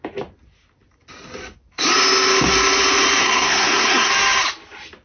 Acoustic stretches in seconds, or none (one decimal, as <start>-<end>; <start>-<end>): 0.0-3.2; 4.1-5.0